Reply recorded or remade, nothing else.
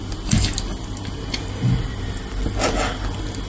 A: recorded